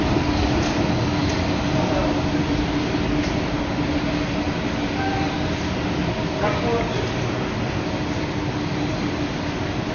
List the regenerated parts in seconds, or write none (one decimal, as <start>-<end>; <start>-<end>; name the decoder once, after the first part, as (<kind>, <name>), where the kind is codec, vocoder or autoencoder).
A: none